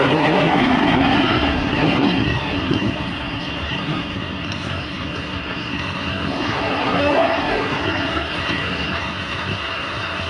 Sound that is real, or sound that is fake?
fake